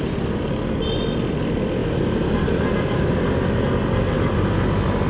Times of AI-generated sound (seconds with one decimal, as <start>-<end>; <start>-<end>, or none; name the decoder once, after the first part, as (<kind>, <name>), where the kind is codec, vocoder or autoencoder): none